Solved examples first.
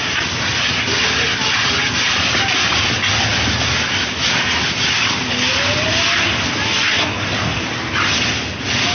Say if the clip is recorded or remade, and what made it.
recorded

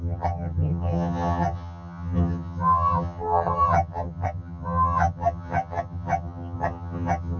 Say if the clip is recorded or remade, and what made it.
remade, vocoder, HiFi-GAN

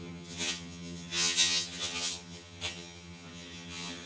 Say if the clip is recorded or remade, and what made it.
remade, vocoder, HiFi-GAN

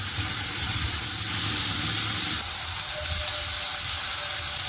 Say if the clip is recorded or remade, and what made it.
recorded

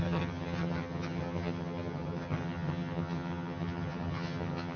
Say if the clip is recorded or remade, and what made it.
remade, vocoder, HiFi-GAN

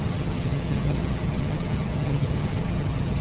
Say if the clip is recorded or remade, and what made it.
remade, vocoder, HiFi-GAN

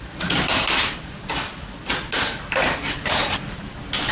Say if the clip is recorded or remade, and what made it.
recorded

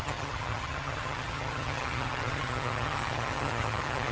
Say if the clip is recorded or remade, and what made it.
remade, vocoder, HiFi-GAN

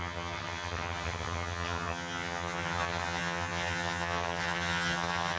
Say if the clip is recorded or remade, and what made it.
remade, vocoder, HiFi-GAN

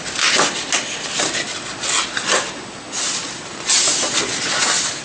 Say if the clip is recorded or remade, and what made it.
recorded